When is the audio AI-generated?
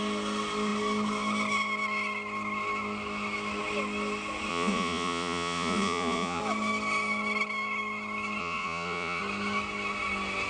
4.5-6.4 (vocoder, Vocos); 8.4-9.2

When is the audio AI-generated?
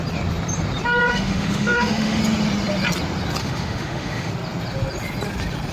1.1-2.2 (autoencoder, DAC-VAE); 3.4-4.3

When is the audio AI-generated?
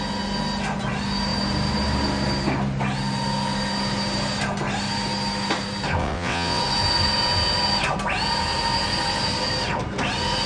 6.0-6.6 (vocoder, WaveNeXt)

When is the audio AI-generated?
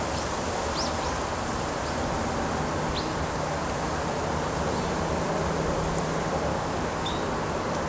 6.5-7.1 (codec, DAC)